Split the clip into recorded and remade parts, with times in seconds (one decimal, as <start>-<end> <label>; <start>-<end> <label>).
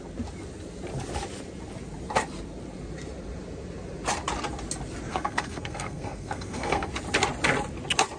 0.0-5.1 recorded; 5.1-6.9 remade; 6.9-8.2 recorded